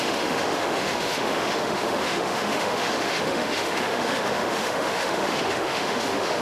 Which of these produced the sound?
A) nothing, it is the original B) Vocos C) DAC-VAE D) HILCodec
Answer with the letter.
C